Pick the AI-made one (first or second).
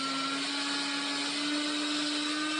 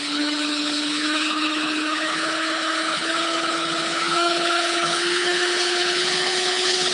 second